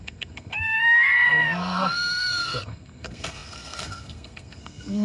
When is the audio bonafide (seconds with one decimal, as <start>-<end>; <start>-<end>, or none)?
none